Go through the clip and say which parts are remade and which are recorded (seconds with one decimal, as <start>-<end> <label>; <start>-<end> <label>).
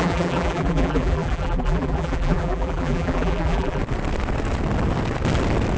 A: 0.0-3.8 remade; 3.8-5.8 recorded